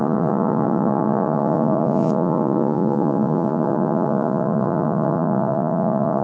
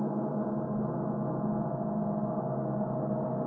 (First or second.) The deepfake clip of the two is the first